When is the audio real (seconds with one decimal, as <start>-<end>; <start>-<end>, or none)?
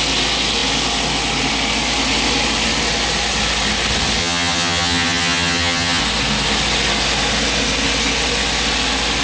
0.0-4.2; 6.0-9.2